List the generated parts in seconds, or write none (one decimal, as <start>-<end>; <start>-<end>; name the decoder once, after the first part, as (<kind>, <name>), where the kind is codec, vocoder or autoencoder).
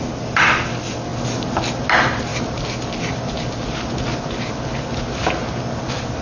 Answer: none